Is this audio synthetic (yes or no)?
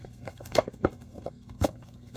yes